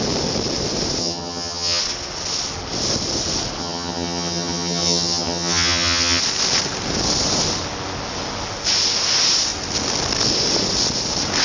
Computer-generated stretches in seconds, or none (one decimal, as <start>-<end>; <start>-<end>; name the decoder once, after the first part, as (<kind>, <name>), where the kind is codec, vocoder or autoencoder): 1.0-1.8 (vocoder, HiFi-GAN); 3.6-6.2